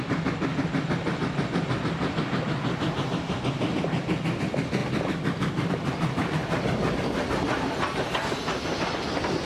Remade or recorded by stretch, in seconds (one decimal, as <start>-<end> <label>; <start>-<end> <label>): 0.0-9.5 recorded